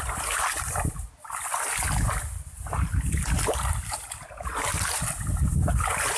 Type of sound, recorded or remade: recorded